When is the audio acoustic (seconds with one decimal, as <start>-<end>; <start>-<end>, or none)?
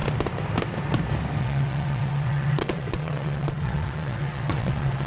0.0-1.4